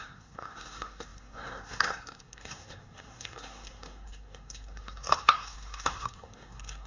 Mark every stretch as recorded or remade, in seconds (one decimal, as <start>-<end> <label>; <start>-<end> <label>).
0.0-6.9 remade